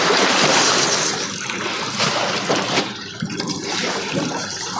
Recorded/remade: remade